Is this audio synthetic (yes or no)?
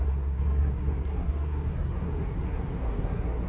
yes